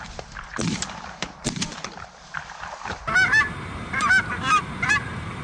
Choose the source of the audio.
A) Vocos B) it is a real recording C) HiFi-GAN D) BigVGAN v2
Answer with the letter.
D